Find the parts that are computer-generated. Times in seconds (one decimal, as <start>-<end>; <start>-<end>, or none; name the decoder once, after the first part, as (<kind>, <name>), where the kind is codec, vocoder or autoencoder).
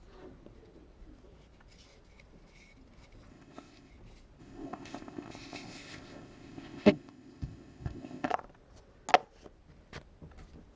3.3-3.9 (codec, ZipCodec); 4.4-8.3